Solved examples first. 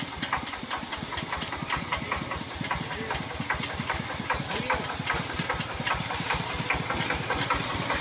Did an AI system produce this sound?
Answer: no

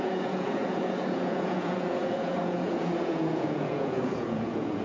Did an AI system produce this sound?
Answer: yes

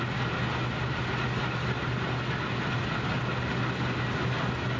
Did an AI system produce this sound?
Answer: no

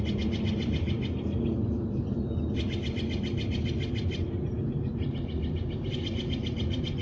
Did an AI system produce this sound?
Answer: no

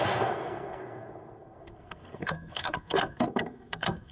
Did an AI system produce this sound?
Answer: yes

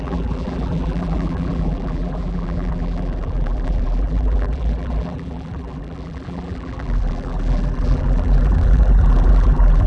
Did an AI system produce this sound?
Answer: yes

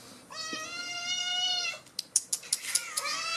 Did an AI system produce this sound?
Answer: no